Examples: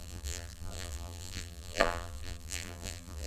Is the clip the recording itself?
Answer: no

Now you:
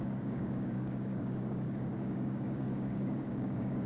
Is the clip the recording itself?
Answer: no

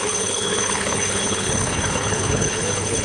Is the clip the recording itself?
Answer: no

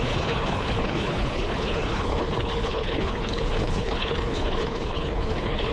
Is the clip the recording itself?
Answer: no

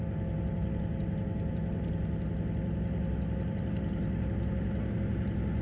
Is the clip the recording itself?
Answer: yes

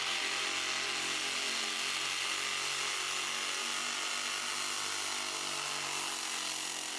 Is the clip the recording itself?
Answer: yes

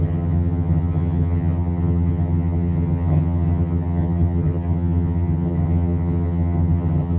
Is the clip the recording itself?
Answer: no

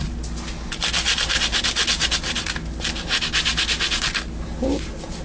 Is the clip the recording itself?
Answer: yes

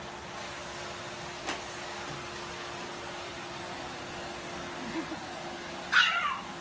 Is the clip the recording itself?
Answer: yes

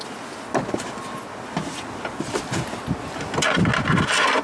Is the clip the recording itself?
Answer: yes